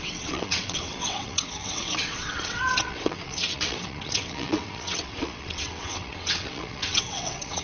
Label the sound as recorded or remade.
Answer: remade